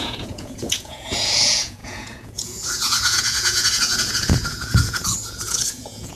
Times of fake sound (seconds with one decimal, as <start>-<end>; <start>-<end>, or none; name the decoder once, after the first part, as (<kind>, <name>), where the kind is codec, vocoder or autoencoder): 0.0-6.2 (vocoder, Vocos)